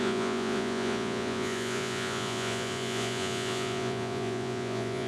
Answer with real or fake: fake